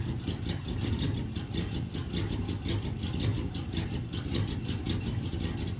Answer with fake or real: real